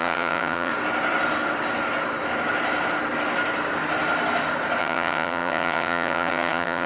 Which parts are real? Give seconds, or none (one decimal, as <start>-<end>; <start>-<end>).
0.7-4.8